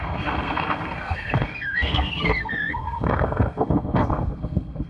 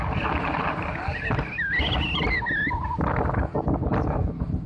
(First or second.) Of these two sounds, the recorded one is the second